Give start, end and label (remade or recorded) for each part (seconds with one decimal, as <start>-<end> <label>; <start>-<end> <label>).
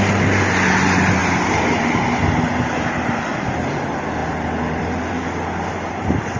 0.0-1.2 recorded; 1.2-1.8 remade; 1.8-6.4 recorded